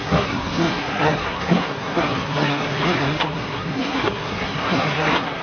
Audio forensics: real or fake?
fake